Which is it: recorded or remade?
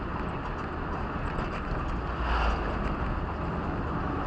recorded